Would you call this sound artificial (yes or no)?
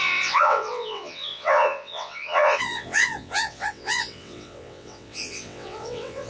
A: yes